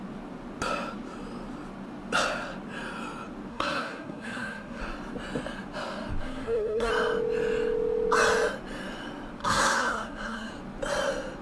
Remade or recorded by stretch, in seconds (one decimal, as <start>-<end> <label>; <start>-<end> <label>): 0.0-3.5 recorded; 3.5-4.8 remade; 4.8-6.2 recorded; 6.2-6.9 remade; 6.9-9.4 recorded; 9.4-10.5 remade; 10.5-11.4 recorded